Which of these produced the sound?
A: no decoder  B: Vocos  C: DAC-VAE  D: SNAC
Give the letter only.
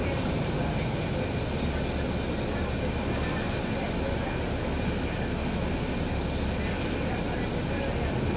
A